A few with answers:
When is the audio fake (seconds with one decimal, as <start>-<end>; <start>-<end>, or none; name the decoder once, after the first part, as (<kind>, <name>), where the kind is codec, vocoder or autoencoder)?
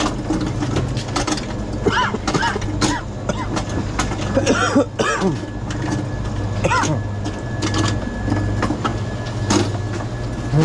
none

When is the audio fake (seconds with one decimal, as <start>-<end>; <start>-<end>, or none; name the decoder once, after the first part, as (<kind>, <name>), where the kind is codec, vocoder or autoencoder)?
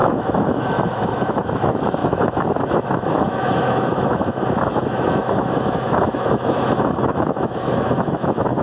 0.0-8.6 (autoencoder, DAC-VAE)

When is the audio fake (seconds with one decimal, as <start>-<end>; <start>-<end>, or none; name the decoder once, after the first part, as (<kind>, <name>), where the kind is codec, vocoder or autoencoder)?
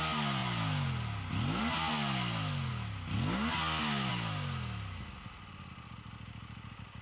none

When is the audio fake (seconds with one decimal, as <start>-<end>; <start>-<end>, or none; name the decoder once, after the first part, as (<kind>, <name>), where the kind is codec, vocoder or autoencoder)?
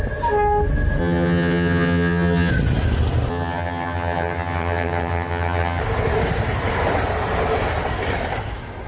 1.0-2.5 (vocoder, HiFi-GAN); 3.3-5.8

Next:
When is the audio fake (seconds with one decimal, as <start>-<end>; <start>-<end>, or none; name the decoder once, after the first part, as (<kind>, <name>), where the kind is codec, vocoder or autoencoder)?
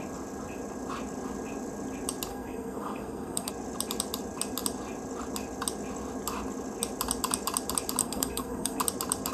2.3-3.5 (codec, SNAC); 8.0-8.8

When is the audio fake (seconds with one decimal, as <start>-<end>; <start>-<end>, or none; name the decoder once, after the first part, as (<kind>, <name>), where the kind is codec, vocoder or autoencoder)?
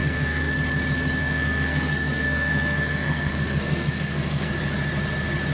0.0-0.5 (codec, SNAC); 1.2-4.5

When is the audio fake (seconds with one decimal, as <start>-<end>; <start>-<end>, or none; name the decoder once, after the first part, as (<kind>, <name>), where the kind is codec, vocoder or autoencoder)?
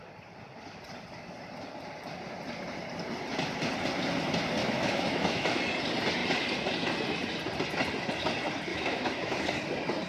4.6-5.6 (autoencoder, DAC-VAE); 8.7-9.4